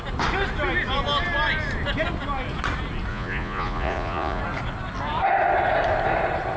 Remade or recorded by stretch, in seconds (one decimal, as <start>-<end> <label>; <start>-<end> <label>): 0.0-3.1 recorded; 3.1-4.4 remade; 4.4-6.6 recorded